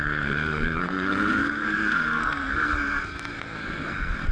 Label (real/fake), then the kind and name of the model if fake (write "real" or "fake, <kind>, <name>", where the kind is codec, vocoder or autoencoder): fake, codec, SNAC